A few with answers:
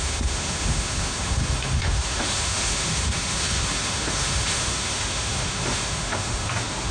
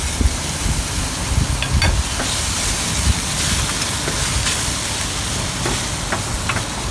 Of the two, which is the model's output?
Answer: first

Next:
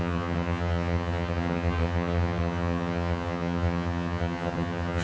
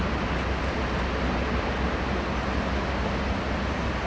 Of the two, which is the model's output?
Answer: first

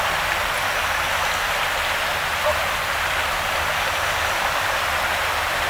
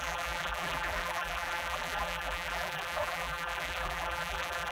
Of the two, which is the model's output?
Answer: second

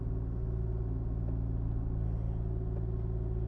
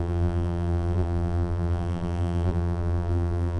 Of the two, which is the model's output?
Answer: second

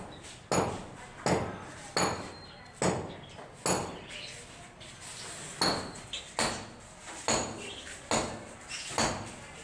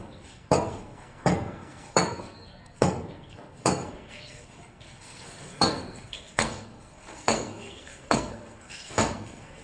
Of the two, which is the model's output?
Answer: second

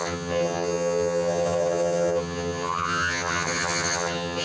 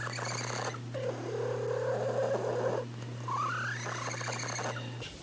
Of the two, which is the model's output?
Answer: first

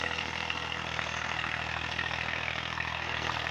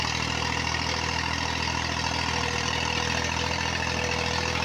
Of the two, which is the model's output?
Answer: first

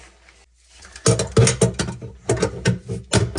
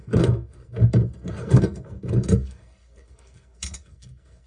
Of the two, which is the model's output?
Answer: second